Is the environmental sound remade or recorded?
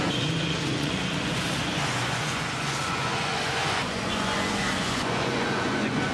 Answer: remade